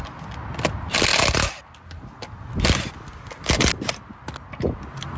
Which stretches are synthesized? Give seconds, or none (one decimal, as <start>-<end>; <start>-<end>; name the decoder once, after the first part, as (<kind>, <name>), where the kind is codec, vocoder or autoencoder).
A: none